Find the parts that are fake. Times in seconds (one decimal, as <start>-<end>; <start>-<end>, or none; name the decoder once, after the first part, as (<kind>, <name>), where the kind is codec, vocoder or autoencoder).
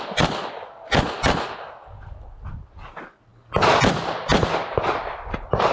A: none